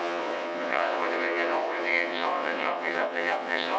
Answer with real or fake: fake